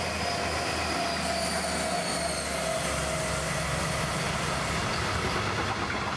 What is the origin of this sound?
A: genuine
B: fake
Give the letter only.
A